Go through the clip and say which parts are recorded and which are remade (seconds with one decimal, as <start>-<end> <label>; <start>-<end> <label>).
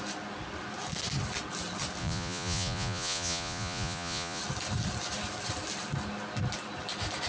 0.0-2.0 recorded; 2.0-4.4 remade; 4.4-7.3 recorded